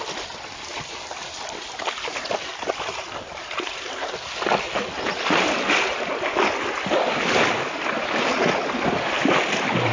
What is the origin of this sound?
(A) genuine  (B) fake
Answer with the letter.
A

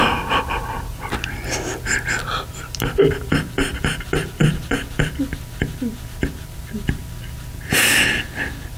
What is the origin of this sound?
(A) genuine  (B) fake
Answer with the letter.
A